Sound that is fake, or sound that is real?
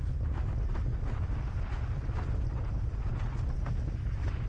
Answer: real